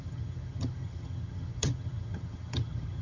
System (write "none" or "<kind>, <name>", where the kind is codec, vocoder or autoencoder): vocoder, HiFi-GAN